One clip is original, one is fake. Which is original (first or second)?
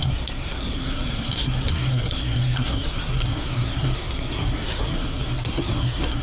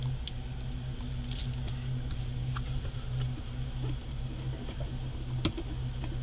second